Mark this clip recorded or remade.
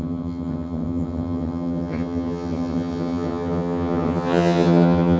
remade